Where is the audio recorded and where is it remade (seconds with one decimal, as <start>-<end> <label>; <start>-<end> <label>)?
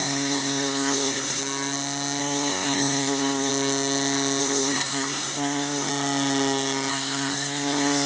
0.0-1.4 remade; 1.4-2.2 recorded; 2.2-3.5 remade; 3.5-4.4 recorded; 4.4-5.9 remade; 5.9-6.9 recorded; 6.9-8.1 remade